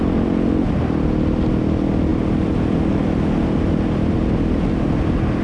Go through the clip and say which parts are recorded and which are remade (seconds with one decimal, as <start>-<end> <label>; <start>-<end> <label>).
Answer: 0.0-5.4 recorded